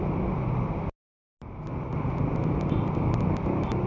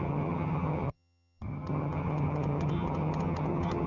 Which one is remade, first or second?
second